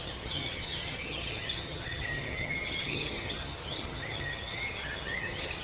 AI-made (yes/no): yes